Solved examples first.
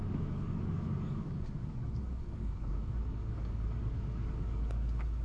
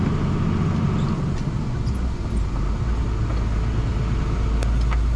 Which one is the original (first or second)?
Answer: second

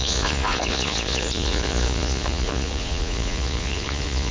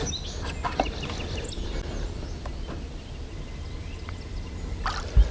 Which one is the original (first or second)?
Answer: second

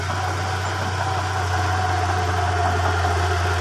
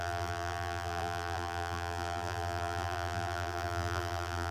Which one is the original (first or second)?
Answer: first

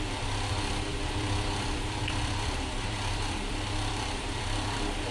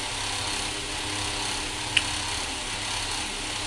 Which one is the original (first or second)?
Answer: second